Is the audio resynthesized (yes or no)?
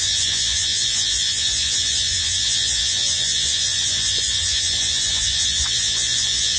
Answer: yes